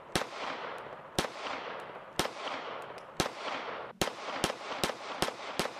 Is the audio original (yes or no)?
yes